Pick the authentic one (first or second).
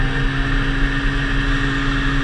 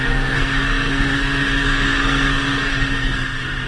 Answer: first